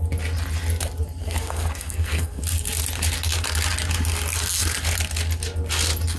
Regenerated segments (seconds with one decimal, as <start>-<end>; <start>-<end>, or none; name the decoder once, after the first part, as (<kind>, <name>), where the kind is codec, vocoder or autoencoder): 1.2-2.4 (codec, SNAC)